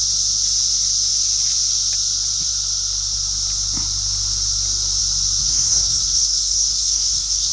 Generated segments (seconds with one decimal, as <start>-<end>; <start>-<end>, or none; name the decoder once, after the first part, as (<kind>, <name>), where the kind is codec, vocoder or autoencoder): 5.4-7.5 (codec, SNAC)